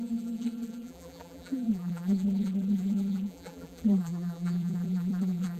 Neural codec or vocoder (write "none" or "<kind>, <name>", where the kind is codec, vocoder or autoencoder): vocoder, BigVGAN v2